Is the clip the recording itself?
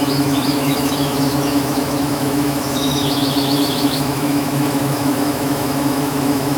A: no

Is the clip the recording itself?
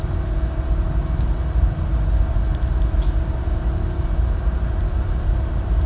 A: yes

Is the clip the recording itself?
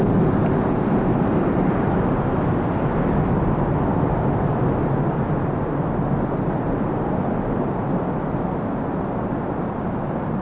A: yes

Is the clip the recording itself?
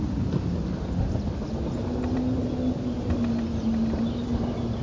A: yes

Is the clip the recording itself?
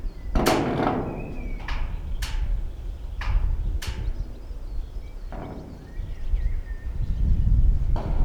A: yes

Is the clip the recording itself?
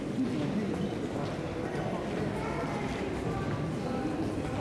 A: yes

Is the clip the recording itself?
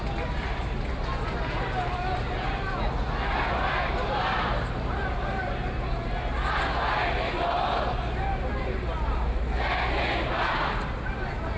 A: yes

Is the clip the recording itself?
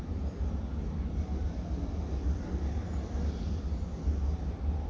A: yes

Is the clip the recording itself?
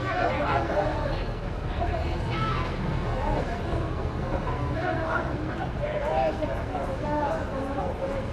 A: no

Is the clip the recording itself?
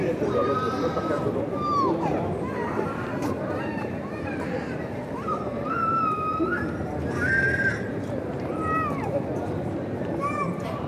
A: no